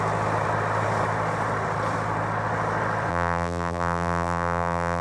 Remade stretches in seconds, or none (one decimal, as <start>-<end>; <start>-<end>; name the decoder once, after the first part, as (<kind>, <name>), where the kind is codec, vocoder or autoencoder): 3.1-5.0 (vocoder, BigVGAN v2)